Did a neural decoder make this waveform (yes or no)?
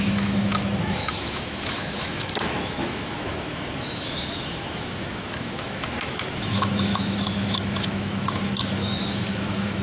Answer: yes